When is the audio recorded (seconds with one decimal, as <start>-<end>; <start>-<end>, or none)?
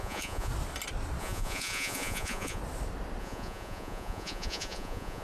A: 0.5-1.2; 2.6-3.2